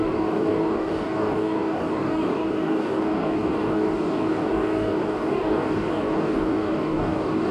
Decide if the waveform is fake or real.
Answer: fake